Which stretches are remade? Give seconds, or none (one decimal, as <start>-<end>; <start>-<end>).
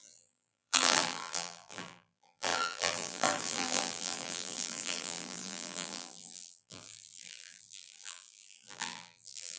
0.0-9.6